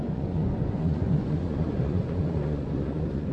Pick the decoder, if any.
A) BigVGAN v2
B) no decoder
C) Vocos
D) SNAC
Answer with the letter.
C